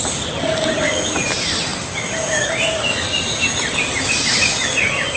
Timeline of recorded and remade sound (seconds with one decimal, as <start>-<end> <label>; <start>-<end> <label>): 0.0-5.2 recorded